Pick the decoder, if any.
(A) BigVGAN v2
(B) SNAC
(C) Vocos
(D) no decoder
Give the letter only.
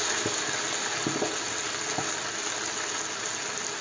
D